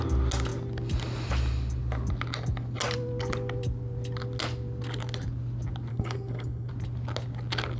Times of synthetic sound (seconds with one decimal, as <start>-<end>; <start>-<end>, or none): 5.9-6.7